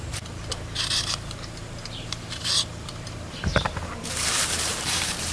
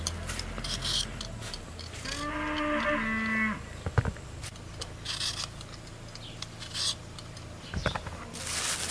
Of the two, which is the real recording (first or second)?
second